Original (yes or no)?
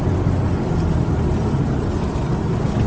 yes